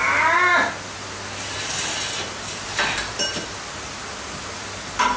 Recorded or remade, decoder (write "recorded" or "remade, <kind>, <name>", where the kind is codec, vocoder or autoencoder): recorded